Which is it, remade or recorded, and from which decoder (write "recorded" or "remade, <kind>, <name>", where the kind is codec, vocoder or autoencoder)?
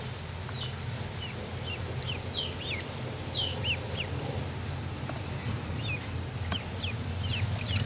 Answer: recorded